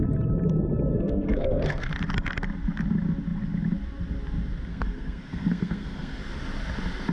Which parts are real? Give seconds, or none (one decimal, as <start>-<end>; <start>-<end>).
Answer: 0.0-0.9; 1.9-4.7; 6.2-7.1